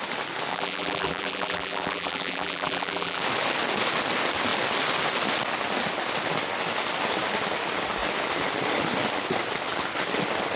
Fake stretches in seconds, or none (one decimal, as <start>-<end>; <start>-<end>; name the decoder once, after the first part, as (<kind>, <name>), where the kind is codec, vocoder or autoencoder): 0.5-3.2 (vocoder, BigVGAN v2)